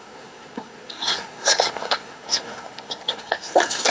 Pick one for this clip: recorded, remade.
remade